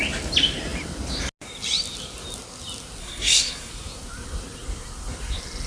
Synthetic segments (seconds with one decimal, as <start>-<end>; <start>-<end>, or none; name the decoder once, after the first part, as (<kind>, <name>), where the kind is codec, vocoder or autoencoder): 3.0-3.7 (codec, SNAC)